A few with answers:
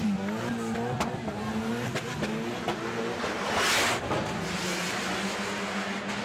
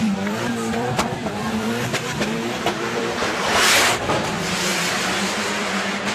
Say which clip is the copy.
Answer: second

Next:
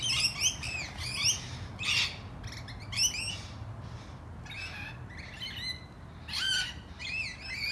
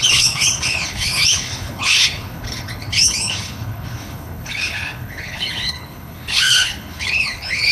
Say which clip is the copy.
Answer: second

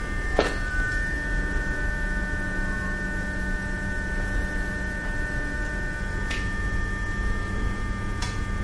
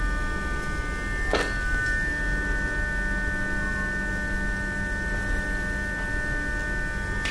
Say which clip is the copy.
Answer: first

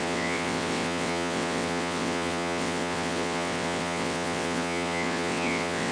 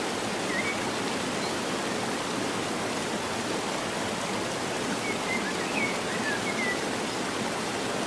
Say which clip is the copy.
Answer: first